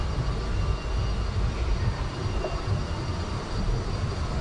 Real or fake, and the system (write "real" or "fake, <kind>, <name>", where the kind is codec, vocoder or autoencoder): real